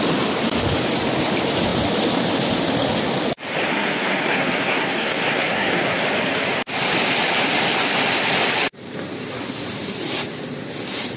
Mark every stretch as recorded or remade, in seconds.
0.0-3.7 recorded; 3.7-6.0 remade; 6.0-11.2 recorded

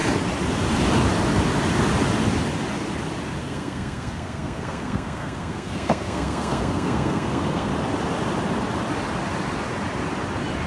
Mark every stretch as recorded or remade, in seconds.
0.0-3.4 recorded; 3.4-7.7 remade; 7.7-10.7 recorded

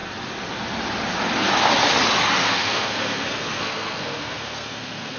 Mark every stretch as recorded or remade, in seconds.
0.0-2.4 recorded; 2.4-5.2 remade

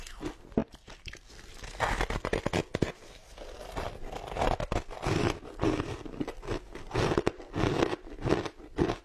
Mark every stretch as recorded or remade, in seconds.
0.0-9.0 recorded

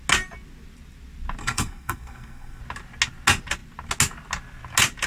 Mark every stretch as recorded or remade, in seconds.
0.0-1.4 recorded; 1.4-2.6 remade; 2.6-5.1 recorded